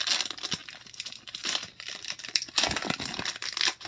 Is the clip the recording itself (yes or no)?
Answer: yes